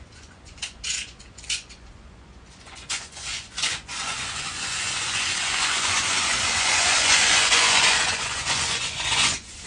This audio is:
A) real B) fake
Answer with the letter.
B